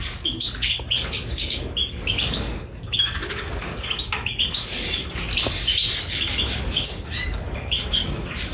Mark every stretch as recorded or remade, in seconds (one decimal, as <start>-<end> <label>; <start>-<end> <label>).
0.0-5.0 remade; 5.0-6.0 recorded; 6.0-8.5 remade